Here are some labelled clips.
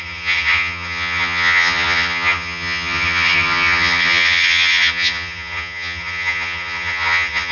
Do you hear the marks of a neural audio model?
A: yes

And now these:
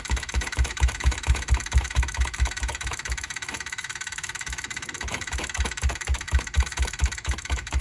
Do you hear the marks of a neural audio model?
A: yes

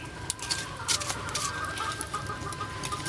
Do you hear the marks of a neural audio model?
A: no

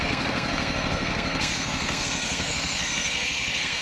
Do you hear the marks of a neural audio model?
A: yes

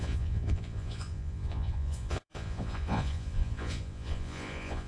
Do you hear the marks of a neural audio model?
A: yes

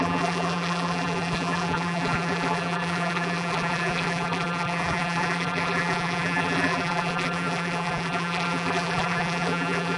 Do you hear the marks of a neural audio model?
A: yes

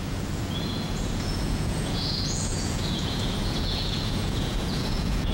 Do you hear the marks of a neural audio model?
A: yes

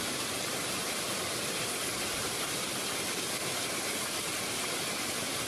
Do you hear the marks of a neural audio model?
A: no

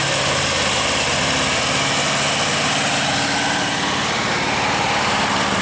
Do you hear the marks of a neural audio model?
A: no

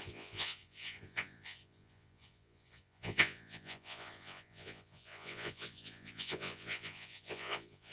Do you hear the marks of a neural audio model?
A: yes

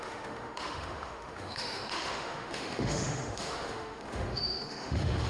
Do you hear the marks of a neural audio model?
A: yes